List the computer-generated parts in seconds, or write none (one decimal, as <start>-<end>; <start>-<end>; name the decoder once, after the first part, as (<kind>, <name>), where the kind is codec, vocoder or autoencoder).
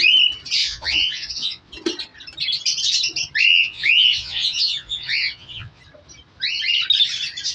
0.6-1.7 (vocoder, Vocos); 3.5-5.8